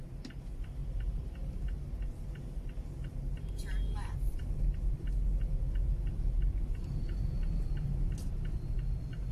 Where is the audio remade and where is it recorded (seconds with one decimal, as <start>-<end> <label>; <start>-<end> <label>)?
0.0-9.3 recorded